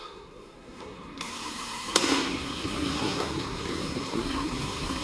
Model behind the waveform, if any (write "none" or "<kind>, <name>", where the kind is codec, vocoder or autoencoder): codec, SNAC